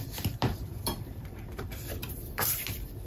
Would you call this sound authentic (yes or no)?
no